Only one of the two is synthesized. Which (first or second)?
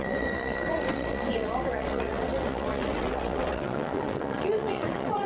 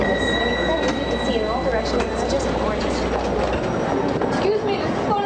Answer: first